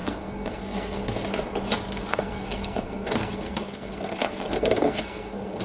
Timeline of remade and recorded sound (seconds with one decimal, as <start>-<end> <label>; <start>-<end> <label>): 0.0-1.0 remade; 1.0-2.1 recorded; 2.1-5.6 remade